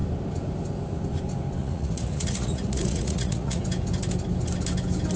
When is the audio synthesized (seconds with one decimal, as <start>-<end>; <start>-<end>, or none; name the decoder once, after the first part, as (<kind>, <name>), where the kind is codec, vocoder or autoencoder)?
1.6-3.6 (vocoder, Vocos)